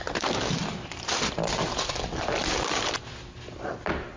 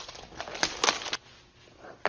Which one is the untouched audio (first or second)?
second